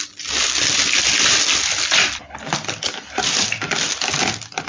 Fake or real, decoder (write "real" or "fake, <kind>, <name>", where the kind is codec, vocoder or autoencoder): real